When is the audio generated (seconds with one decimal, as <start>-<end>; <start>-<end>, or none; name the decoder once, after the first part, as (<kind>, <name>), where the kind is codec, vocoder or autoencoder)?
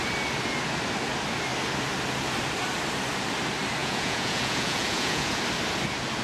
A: 3.8-5.4 (vocoder, Vocos)